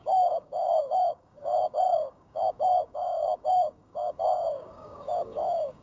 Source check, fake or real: fake